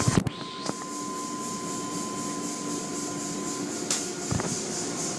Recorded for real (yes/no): yes